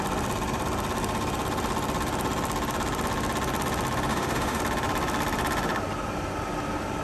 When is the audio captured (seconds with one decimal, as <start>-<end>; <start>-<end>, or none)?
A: 0.0-4.1; 4.6-7.0